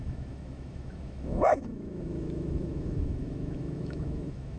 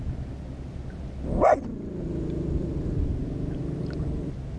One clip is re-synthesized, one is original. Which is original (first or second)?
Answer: second